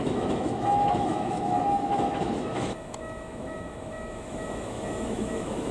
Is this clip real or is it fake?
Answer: fake